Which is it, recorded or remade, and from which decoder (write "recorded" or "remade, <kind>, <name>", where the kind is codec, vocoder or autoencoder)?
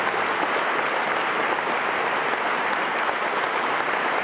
recorded